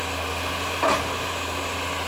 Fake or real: real